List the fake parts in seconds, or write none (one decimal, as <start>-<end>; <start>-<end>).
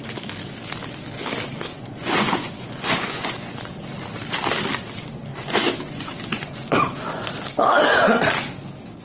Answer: 1.7-3.8; 5.3-7.3